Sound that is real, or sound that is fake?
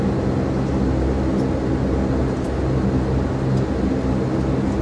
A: real